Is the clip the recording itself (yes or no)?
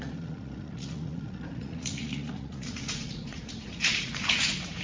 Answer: no